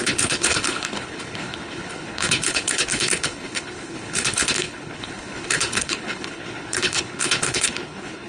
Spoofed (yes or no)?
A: yes